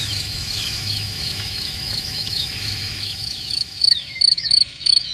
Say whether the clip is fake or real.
fake